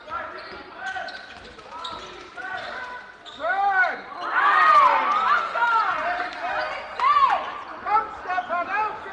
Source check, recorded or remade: recorded